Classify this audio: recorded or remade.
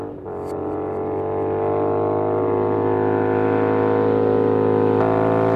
recorded